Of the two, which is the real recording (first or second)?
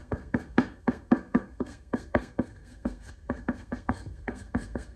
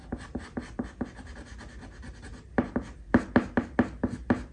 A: second